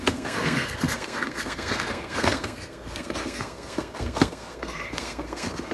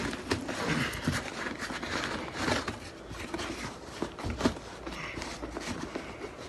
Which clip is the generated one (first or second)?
first